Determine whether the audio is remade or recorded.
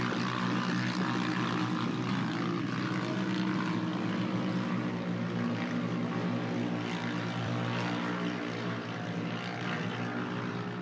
recorded